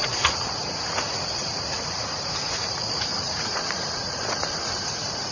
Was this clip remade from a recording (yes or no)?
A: yes